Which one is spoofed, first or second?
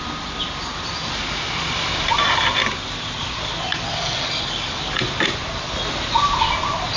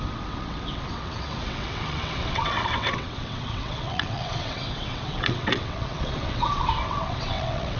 second